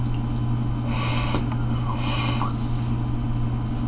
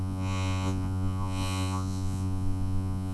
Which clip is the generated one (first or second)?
second